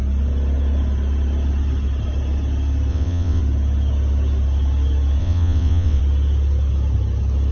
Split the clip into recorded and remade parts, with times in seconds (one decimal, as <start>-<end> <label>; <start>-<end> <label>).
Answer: 0.0-2.9 recorded; 2.9-3.4 remade; 3.4-5.2 recorded; 5.2-6.0 remade; 6.0-7.5 recorded